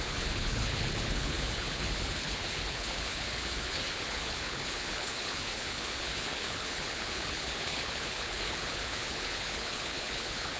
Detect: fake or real fake